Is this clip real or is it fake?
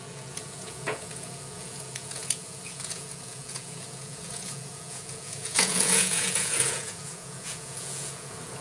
fake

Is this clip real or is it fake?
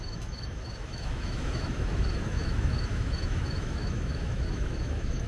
fake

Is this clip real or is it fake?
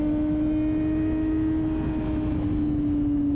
real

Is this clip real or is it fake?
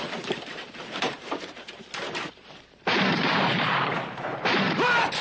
fake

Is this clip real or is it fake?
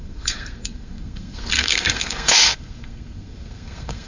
fake